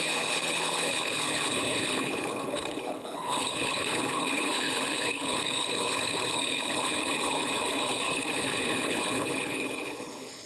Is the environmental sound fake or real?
fake